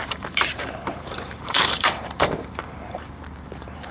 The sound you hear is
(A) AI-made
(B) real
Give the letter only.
A